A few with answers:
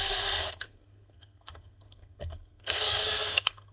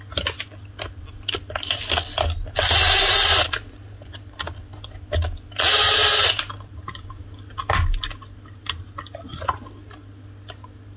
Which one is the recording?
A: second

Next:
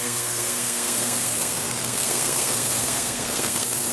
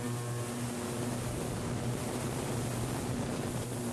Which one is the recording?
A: second